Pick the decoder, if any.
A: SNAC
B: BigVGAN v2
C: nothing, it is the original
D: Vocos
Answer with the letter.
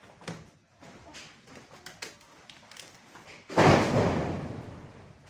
C